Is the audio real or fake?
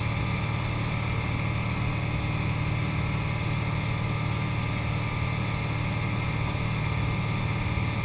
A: real